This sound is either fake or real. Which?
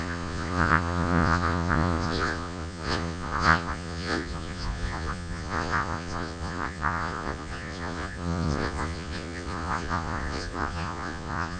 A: fake